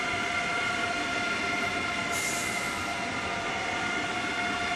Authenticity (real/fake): real